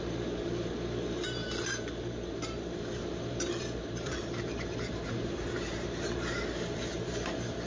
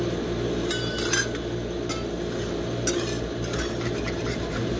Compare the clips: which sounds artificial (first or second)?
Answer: first